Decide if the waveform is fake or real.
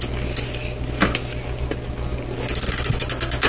real